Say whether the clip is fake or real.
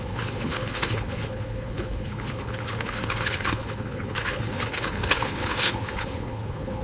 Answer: fake